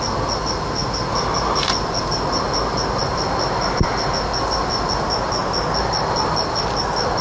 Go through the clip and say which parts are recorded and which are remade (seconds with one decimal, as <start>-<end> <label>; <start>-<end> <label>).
0.0-7.2 recorded